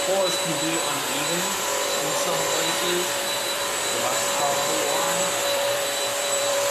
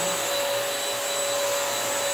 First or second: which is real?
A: second